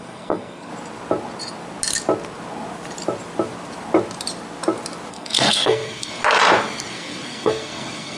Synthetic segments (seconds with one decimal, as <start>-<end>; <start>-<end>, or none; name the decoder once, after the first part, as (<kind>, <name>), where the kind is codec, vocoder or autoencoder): 0.0-0.7 (codec, SNAC); 5.1-6.2; 6.9-8.2